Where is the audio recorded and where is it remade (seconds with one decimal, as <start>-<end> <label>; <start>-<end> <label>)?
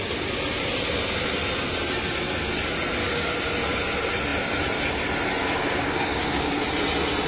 0.0-3.0 recorded; 3.0-3.5 remade; 3.5-5.4 recorded; 5.4-6.6 remade; 6.6-7.3 recorded